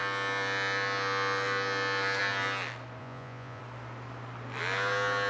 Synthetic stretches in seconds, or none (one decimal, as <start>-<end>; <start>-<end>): 3.0-3.6